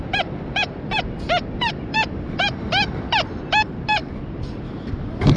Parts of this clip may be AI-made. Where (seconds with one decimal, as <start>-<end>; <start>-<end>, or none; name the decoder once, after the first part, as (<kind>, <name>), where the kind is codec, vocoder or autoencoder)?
4.0-5.4 (vocoder, BigVGAN v2)